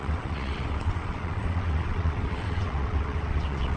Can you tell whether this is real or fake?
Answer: fake